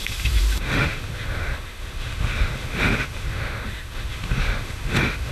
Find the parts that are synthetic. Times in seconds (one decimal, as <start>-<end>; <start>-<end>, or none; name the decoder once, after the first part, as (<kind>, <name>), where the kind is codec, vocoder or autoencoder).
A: 0.0-5.3 (autoencoder, DAC-VAE)